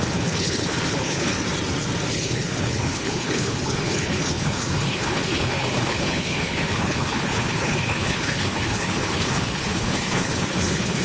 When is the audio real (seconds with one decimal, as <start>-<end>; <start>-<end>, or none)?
1.3-2.1